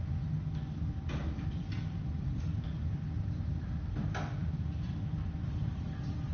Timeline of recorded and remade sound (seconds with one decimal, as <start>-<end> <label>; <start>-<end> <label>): 0.0-1.2 recorded; 1.2-2.6 remade; 2.6-4.4 recorded; 4.4-6.3 remade

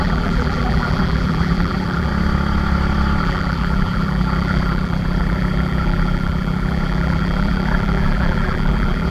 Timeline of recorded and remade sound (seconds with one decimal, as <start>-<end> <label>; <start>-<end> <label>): 0.0-2.1 remade; 2.1-3.2 recorded; 3.2-9.1 remade

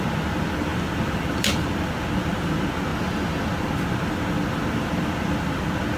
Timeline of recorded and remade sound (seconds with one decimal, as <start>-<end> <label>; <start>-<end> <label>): 0.0-6.0 recorded

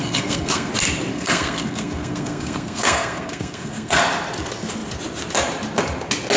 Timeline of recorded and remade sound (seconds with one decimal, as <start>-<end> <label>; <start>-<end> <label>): 0.0-0.7 remade; 0.7-1.1 recorded; 1.1-4.0 remade; 4.0-6.4 recorded

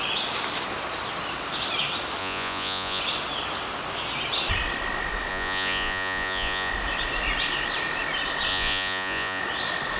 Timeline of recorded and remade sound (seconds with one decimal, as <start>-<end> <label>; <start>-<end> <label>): 0.0-2.2 recorded; 2.2-3.0 remade; 3.0-5.3 recorded; 5.3-6.7 remade; 6.7-8.5 recorded; 8.5-9.4 remade; 9.4-10.0 recorded

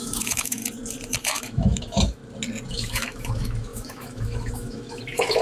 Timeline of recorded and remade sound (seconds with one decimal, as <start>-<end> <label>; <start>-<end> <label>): 0.0-0.6 remade; 0.6-1.2 recorded; 1.2-2.2 remade; 2.2-2.7 recorded; 2.7-5.4 remade